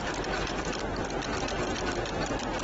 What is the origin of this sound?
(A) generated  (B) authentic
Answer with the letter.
B